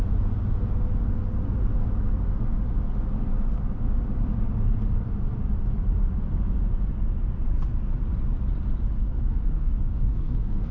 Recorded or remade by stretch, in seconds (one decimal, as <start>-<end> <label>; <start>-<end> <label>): 0.0-9.0 recorded; 9.0-10.7 remade